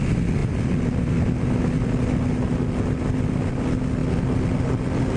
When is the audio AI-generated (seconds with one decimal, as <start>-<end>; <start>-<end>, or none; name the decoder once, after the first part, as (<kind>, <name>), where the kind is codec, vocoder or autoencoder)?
none